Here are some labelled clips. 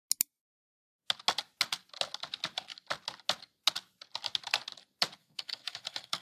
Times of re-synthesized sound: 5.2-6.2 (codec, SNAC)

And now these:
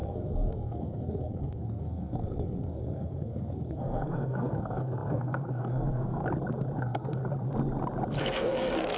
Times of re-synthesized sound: 0.0-6.2 (codec, SNAC); 6.8-7.2; 8.2-9.0

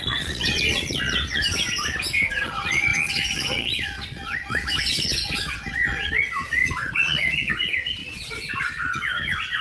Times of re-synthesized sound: 0.0-1.4 (vocoder, Vocos); 2.3-9.6